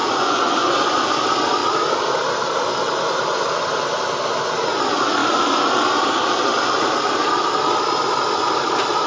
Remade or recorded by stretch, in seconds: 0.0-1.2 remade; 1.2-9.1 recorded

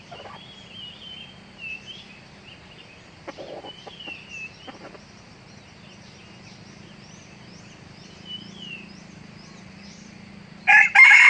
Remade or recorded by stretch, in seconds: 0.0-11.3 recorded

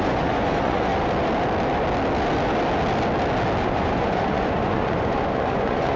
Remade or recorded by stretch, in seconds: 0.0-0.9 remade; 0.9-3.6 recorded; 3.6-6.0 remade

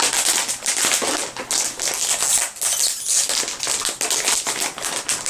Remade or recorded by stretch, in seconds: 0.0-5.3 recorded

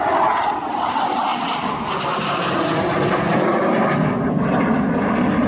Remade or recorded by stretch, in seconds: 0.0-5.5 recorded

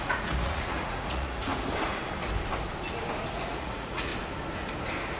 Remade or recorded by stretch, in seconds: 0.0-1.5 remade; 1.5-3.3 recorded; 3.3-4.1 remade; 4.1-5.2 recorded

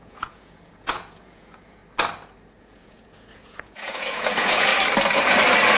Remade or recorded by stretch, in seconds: 0.0-1.8 remade; 1.8-2.6 recorded; 2.6-4.7 remade; 4.7-5.8 recorded

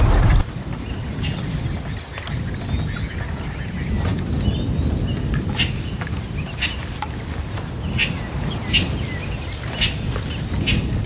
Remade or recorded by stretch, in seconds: 0.0-11.1 recorded